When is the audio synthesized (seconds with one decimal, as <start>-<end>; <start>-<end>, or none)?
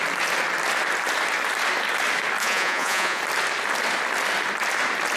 2.4-3.2